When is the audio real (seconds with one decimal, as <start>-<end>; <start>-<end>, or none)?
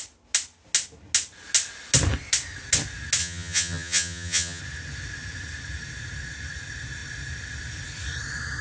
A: 0.0-3.2; 4.6-8.6